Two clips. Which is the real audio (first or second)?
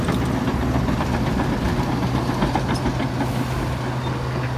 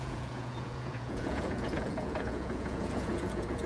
first